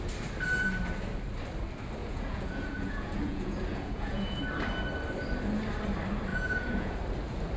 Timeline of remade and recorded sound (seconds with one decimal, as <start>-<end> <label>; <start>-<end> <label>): 0.0-2.0 recorded; 2.0-4.4 remade; 4.4-6.3 recorded; 6.3-7.0 remade; 7.0-7.6 recorded